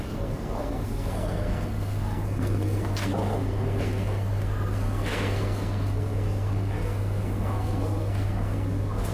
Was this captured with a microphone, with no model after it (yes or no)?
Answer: no